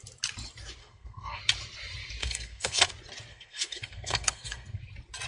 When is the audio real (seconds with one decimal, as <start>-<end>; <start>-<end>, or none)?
0.0-0.8; 1.4-2.2; 2.9-3.3; 4.8-5.3